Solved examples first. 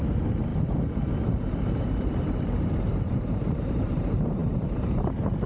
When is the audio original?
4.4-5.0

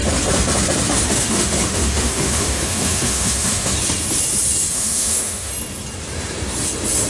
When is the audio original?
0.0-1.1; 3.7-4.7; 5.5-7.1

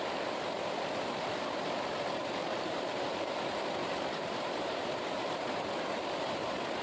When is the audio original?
0.0-2.5; 3.4-6.8

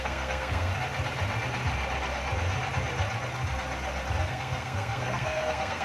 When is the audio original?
0.7-4.2

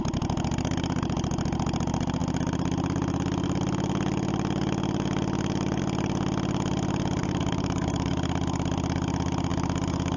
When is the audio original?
0.0-7.2; 8.1-10.2

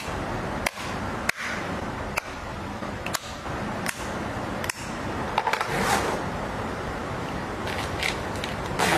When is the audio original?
none

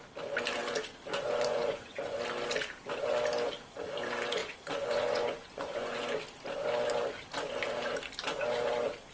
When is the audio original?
0.0-1.1; 2.2-4.4; 6.0-9.1

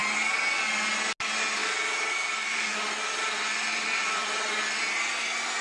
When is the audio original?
0.0-1.6; 4.8-5.6